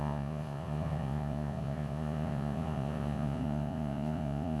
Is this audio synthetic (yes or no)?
yes